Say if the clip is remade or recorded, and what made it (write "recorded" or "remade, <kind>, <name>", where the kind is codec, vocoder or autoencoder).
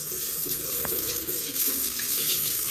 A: remade, codec, SNAC